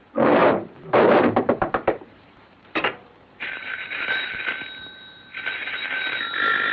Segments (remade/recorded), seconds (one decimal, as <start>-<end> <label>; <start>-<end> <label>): 0.0-0.4 recorded; 0.4-4.4 remade; 4.4-5.6 recorded; 5.6-6.2 remade; 6.2-6.7 recorded

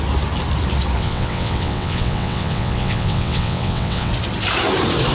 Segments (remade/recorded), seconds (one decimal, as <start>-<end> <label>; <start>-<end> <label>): 0.0-1.0 recorded; 1.0-4.1 remade; 4.1-5.1 recorded